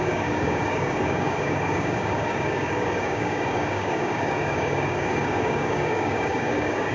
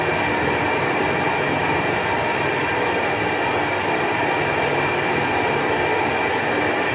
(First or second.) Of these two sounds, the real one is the second